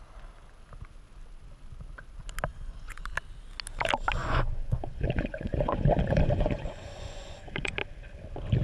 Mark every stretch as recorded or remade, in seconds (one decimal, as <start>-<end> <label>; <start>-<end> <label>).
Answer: 0.0-2.5 recorded; 2.5-3.0 remade; 3.0-4.2 recorded; 4.2-7.7 remade; 7.7-8.6 recorded